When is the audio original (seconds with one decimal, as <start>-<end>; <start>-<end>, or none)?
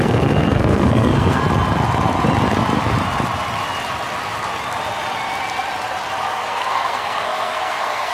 1.4-6.3